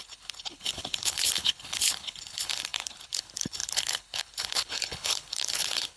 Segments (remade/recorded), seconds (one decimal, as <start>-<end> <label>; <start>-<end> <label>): 0.0-6.0 remade